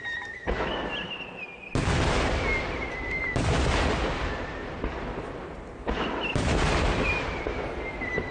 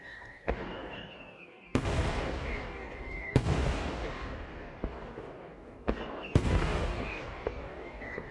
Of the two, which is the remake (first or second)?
second